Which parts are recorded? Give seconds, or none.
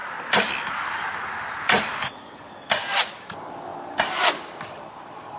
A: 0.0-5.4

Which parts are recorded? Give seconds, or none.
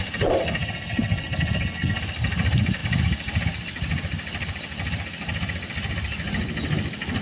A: 0.0-0.6; 2.0-7.2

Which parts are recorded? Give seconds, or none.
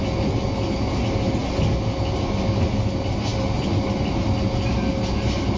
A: 0.0-5.6